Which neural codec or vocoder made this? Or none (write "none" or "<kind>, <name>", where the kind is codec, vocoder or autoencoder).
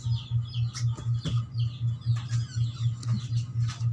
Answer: none